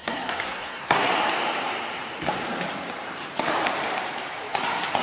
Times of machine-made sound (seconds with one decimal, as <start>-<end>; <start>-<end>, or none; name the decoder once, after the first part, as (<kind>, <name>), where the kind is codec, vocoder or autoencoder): 0.0-1.1 (codec, SNAC)